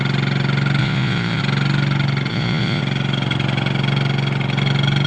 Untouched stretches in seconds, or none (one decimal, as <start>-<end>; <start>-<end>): 0.0-0.8; 1.4-2.3; 2.8-5.1